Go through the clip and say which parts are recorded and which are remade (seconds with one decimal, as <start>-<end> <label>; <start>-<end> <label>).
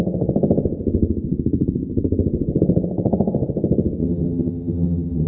0.0-4.0 recorded; 4.0-5.3 remade